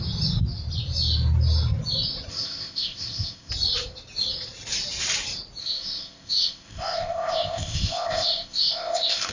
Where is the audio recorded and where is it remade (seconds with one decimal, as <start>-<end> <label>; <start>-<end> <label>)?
0.0-2.3 recorded; 2.3-3.5 remade; 3.5-5.6 recorded; 5.6-9.3 remade